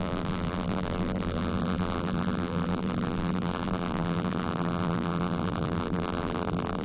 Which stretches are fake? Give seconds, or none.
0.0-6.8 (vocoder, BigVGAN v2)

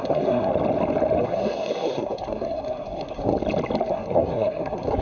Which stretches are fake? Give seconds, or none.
0.0-0.5 (codec, SNAC); 1.2-3.3; 3.9-5.0

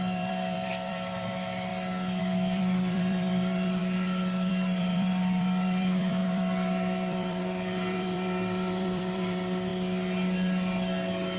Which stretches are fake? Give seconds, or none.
0.0-1.7 (vocoder, BigVGAN v2); 2.2-9.7

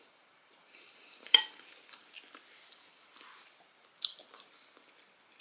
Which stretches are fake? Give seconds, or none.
0.0-2.0 (vocoder, BigVGAN v2)

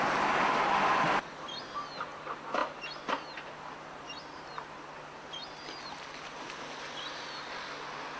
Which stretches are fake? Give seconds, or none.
none

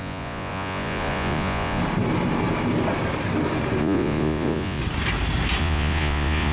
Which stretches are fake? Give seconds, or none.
0.0-1.8 (vocoder, Vocos); 3.8-4.8; 5.6-6.5

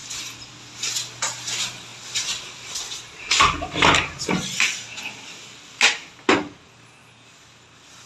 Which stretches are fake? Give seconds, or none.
none